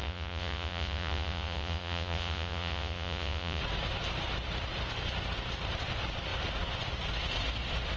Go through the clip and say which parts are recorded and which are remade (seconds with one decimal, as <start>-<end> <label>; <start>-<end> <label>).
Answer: 0.0-3.6 remade; 3.6-8.0 recorded